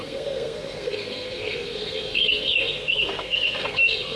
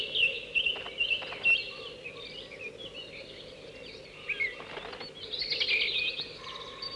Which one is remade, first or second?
first